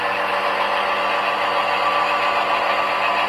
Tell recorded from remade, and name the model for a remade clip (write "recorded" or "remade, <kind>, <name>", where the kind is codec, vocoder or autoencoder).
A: recorded